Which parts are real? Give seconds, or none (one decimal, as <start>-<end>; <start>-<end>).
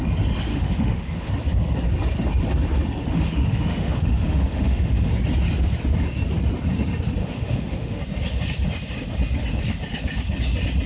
0.0-0.5; 1.3-3.0; 5.1-7.2; 8.0-10.9